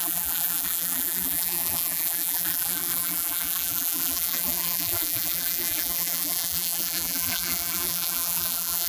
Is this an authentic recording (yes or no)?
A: no